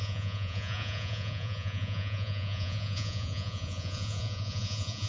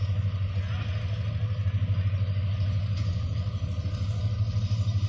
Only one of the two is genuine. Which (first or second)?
second